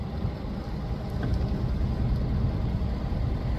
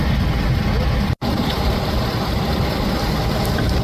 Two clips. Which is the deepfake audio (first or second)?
second